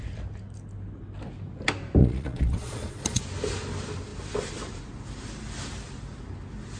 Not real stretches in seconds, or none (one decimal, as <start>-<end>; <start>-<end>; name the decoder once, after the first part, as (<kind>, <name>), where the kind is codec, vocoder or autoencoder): 2.0-3.2 (vocoder, Vocos)

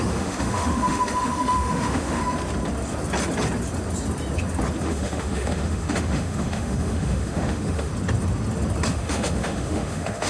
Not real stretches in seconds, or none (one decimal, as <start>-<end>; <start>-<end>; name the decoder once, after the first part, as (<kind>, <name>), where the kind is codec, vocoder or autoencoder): 0.0-2.2 (autoencoder, DAC-VAE); 4.8-7.9; 8.9-10.3

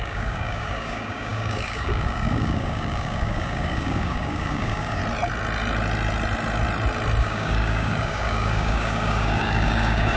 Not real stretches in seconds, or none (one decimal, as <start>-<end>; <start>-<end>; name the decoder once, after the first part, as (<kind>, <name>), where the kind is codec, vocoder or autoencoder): 0.0-5.0 (codec, DAC); 7.2-10.2

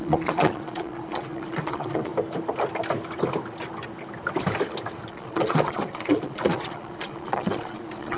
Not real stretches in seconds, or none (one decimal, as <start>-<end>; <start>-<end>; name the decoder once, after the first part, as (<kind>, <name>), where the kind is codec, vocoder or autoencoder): 0.0-2.1 (vocoder, Vocos); 5.1-8.2

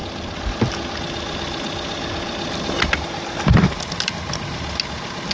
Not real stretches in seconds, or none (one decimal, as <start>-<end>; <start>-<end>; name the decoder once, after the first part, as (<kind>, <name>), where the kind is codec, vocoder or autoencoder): none

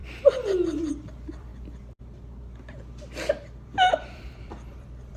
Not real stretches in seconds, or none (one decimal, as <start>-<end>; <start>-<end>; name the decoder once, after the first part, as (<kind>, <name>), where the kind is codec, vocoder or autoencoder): 0.0-1.5 (vocoder, BigVGAN v2); 3.9-5.2

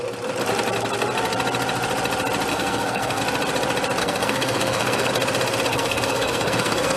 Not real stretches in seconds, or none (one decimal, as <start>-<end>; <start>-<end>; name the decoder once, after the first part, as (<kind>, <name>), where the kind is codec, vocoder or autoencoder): 2.5-3.2 (codec, SNAC); 4.0-5.1; 5.7-7.0